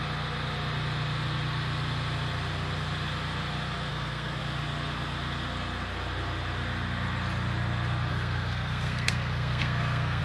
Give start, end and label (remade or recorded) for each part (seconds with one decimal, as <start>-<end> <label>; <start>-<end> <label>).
0.0-3.9 recorded; 3.9-4.4 remade; 4.4-8.1 recorded; 8.1-10.2 remade